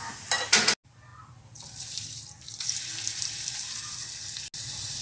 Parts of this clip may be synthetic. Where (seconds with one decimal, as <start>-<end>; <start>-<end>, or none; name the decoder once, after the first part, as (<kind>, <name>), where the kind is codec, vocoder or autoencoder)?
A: 1.1-4.1 (vocoder, BigVGAN v2)